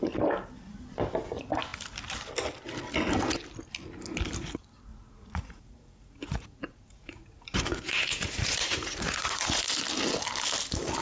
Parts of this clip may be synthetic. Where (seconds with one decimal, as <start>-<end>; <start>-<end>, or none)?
4.9-9.7